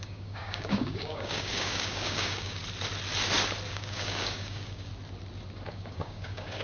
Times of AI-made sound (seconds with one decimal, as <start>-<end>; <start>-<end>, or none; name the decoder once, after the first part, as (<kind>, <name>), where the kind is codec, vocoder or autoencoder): 0.0-2.6 (codec, DAC); 3.7-4.9; 5.7-6.6